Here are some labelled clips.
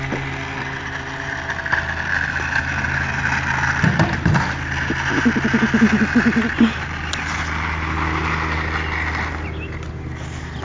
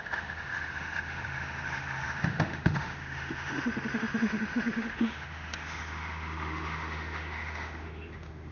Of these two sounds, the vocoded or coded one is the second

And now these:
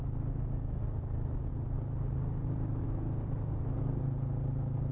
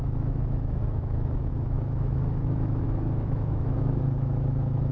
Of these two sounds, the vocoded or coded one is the second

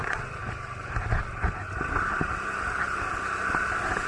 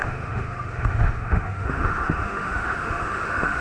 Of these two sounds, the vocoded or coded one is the second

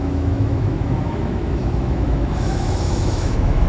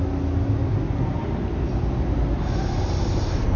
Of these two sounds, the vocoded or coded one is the first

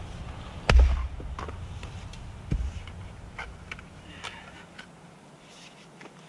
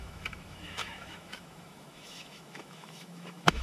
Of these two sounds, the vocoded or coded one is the second